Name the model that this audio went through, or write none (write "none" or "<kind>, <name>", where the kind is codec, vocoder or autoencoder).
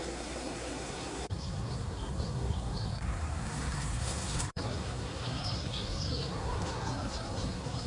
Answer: codec, SNAC